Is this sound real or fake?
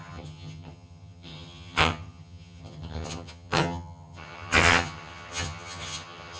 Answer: fake